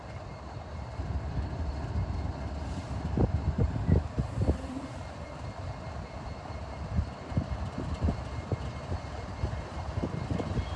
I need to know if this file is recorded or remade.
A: remade